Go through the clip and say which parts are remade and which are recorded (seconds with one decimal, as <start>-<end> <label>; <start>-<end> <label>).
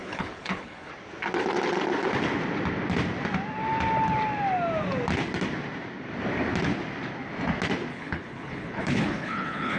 0.0-0.9 remade; 0.9-7.9 recorded; 7.9-9.8 remade